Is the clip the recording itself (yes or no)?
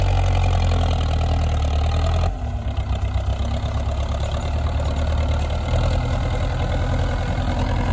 yes